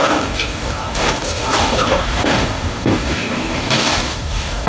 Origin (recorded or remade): remade